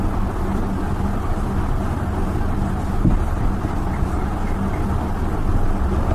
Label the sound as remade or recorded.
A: recorded